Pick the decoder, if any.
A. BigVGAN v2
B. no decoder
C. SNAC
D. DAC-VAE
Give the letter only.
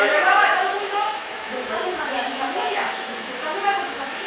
D